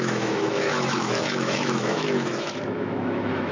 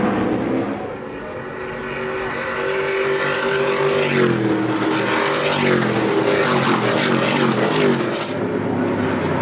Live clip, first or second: second